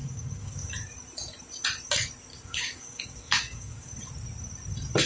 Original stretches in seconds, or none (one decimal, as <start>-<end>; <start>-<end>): 0.7-2.3; 3.9-5.1